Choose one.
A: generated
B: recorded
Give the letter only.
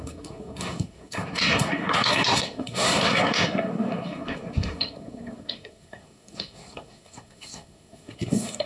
A